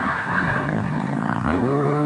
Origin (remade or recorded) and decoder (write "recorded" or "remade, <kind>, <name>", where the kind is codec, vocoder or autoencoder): remade, codec, SNAC